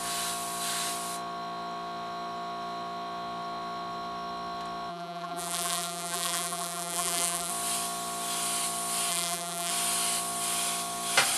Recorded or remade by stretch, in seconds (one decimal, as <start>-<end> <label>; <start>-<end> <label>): 0.0-4.9 recorded; 4.9-7.5 remade; 7.5-9.1 recorded; 9.1-9.7 remade; 9.7-11.4 recorded